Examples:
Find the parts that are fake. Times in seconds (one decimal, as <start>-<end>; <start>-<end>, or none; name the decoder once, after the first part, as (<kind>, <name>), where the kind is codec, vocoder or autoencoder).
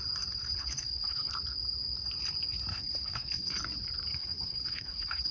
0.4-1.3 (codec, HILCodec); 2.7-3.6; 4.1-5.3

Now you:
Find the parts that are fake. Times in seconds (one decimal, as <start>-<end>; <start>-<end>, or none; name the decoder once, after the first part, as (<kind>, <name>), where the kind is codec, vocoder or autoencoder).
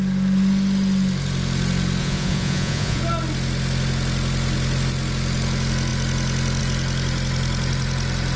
2.0-3.0 (vocoder, Vocos)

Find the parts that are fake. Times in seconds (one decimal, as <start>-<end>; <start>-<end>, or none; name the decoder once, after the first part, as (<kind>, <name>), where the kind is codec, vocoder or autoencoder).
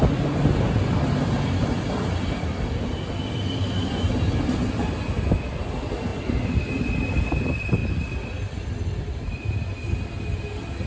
none